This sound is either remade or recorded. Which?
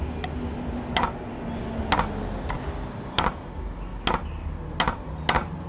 recorded